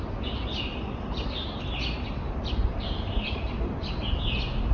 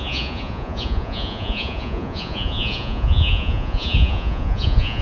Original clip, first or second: first